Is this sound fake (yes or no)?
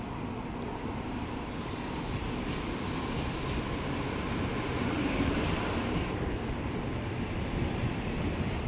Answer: yes